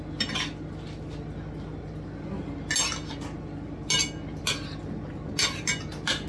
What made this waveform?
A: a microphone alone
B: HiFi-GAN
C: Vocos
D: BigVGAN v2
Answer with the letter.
A